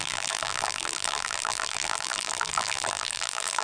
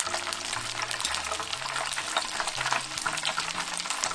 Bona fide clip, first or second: second